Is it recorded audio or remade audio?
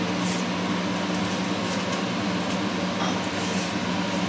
recorded